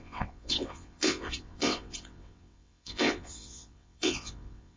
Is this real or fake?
fake